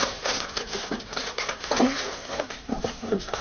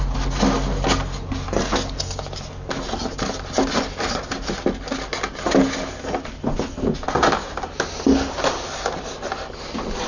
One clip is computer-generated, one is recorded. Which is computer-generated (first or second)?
first